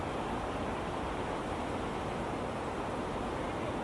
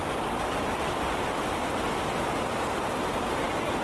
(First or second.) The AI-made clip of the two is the second